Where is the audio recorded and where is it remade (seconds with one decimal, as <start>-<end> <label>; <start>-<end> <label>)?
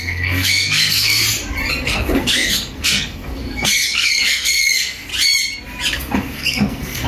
0.0-1.2 remade; 1.2-1.7 recorded; 1.7-5.1 remade; 5.1-5.9 recorded; 5.9-7.1 remade